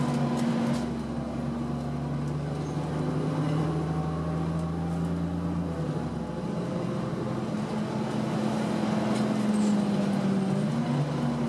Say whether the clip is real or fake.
real